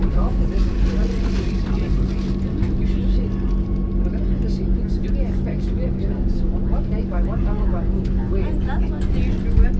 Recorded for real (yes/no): yes